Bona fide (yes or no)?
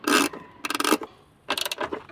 yes